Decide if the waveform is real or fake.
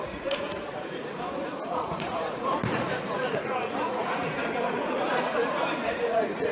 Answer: fake